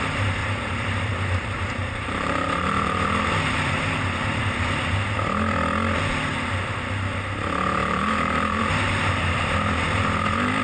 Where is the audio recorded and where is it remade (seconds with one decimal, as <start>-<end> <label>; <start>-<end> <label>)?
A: 0.0-0.4 recorded; 0.4-4.4 remade; 4.4-7.8 recorded; 7.8-9.5 remade; 9.5-10.6 recorded